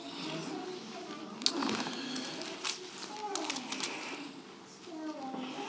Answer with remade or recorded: recorded